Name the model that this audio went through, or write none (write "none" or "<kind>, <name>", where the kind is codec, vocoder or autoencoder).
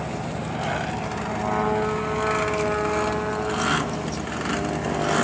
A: none